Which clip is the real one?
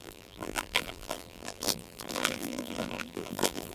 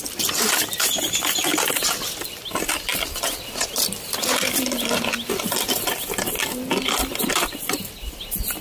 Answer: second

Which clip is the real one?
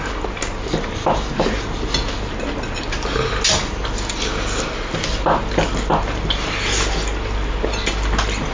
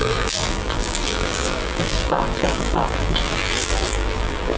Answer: first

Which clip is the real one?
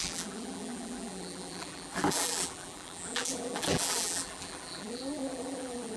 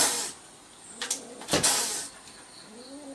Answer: second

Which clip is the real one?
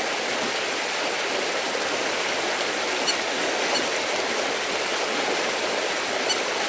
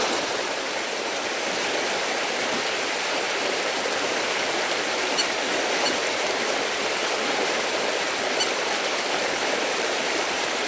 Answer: first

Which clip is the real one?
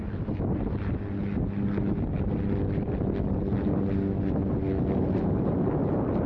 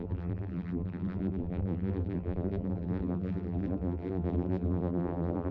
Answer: first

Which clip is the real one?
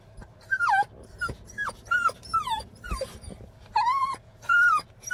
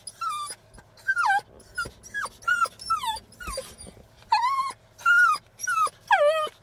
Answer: second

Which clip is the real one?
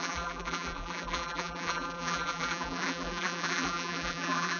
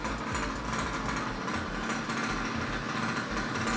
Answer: second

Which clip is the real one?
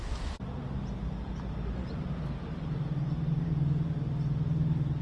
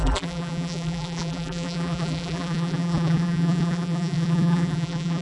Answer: first